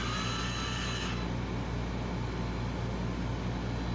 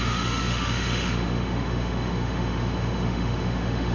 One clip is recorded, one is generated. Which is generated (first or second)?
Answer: second